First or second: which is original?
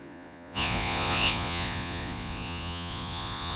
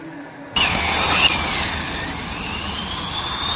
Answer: second